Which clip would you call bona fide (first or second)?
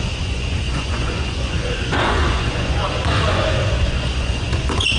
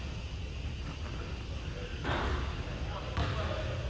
second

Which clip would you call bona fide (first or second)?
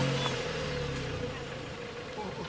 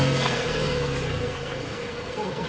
first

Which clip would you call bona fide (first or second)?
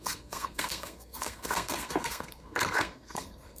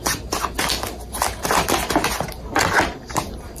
second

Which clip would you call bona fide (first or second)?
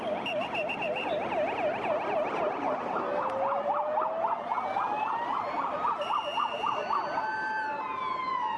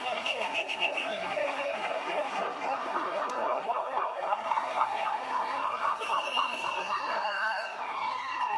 first